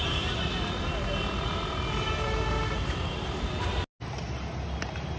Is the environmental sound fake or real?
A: real